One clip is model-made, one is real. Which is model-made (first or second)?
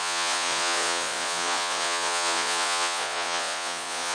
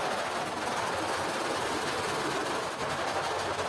first